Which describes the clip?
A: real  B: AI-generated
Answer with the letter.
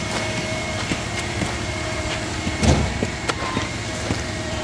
B